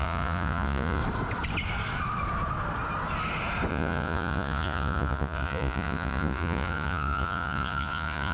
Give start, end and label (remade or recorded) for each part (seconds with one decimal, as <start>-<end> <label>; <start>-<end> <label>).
0.0-1.0 remade; 1.0-3.7 recorded; 3.7-8.3 remade